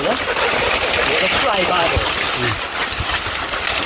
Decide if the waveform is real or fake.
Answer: real